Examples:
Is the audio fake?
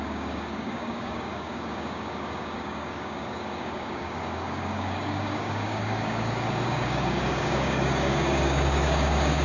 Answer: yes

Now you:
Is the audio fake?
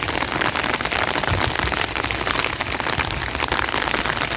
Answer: no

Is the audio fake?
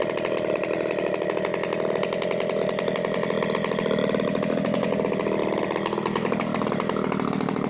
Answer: no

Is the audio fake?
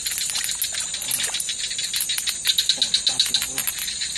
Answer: no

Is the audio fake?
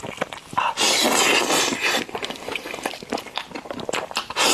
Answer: yes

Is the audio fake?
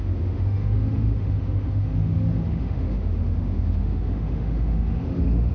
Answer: yes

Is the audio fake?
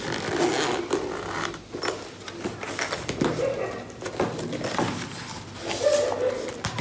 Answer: no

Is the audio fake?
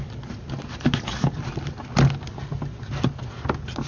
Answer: no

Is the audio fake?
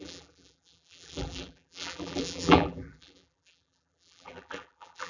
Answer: yes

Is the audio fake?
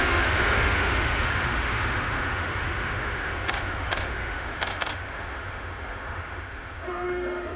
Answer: yes